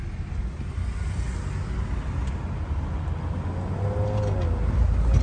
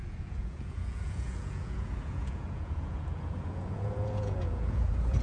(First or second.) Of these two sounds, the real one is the first